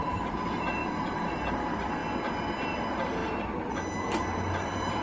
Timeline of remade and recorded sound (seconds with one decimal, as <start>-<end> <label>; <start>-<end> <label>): 0.0-2.0 remade; 2.0-2.7 recorded; 2.7-5.0 remade